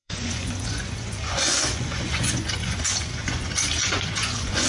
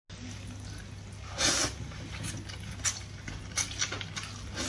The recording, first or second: second